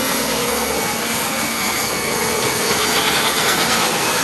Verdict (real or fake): fake